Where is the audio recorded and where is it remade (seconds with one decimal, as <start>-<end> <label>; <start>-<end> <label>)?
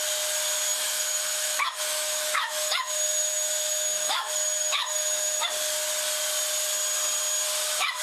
0.0-0.7 recorded; 0.7-5.5 remade; 5.5-8.0 recorded